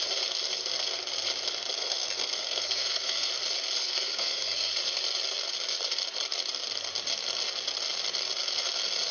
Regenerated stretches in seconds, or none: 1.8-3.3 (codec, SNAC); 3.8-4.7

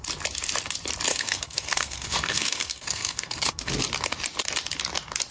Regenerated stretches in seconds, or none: 1.1-3.7 (codec, SNAC)

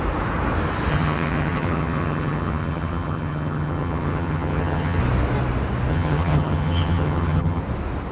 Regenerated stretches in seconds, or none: 0.9-5.0 (vocoder, HiFi-GAN); 5.9-7.6

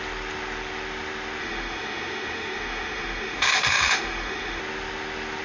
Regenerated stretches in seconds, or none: 1.4-4.6 (autoencoder, DAC-VAE)

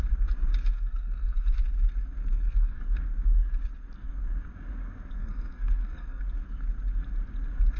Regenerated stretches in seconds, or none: 0.7-1.6 (codec, SNAC); 2.2-2.8; 5.2-6.2

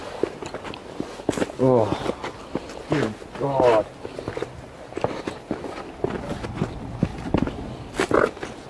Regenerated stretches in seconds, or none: 0.0-0.6 (vocoder, BigVGAN v2); 7.1-7.6

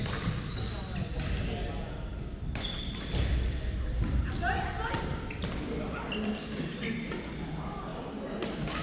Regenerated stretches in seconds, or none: none

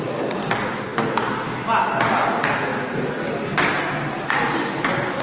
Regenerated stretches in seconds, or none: none